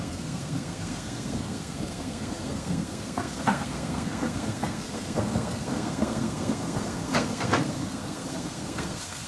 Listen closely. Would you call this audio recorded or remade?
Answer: remade